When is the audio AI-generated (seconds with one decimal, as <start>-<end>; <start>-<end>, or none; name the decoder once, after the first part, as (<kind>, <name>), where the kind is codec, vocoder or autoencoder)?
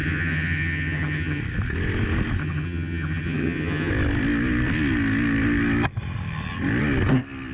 0.0-1.4 (vocoder, HiFi-GAN); 2.4-3.9